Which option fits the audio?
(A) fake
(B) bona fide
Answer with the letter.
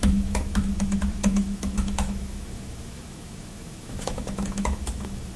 A